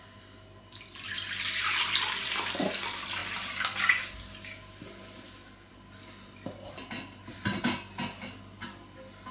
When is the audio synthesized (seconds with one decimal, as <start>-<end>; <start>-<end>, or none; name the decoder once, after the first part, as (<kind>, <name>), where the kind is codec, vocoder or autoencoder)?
none